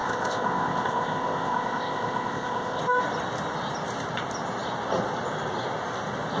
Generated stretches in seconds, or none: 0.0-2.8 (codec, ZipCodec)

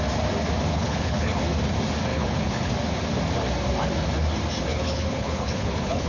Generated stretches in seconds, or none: 0.7-1.3 (codec, HILCodec); 2.1-2.7; 4.7-6.1

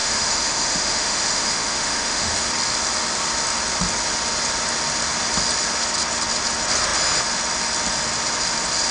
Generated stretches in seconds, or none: 0.0-2.5 (autoencoder, DAC-VAE)

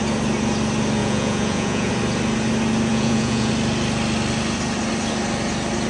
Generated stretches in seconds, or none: 1.0-1.9 (vocoder, Vocos); 2.9-3.5

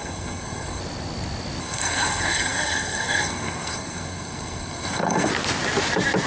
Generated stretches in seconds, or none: 0.0-0.8 (codec, SNAC); 1.6-5.3

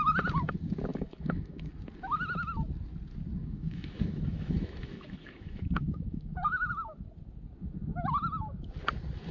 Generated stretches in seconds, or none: 0.9-1.7 (autoencoder, DAC-VAE); 3.4-6.7